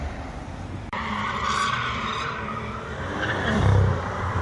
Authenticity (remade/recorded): remade